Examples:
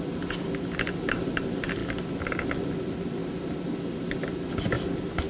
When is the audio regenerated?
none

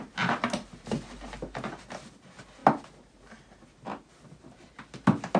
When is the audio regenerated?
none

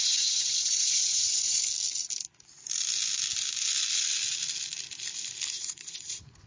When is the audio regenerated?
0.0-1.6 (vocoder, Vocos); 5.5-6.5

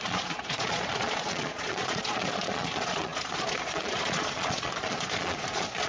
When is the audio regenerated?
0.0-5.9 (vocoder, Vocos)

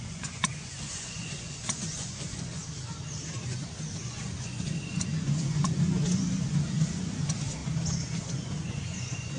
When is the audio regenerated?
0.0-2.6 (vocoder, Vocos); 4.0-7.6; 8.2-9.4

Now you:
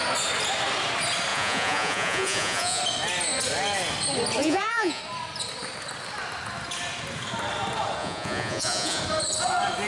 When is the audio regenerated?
1.3-2.8 (vocoder, Vocos); 4.4-5.0; 8.0-9.0

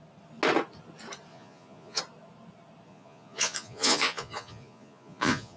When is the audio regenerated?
1.3-2.0 (vocoder, Vocos); 2.9-5.6

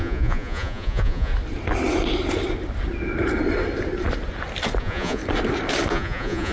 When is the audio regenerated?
0.0-1.3 (vocoder, Vocos); 4.8-5.2; 5.9-6.5